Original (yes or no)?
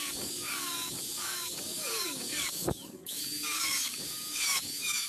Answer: no